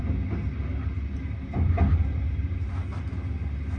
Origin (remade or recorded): recorded